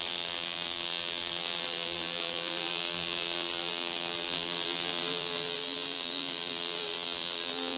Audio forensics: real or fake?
fake